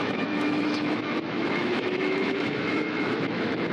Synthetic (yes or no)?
yes